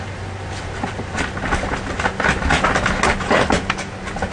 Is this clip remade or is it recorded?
recorded